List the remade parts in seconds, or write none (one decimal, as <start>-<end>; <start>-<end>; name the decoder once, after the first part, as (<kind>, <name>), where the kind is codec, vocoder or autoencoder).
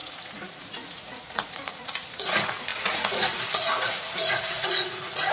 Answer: 0.0-5.3 (vocoder, Vocos)